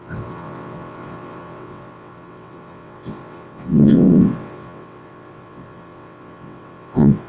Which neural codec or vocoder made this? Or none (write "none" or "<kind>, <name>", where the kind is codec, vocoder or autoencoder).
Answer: vocoder, WaveNeXt